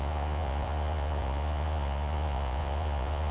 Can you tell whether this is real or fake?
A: fake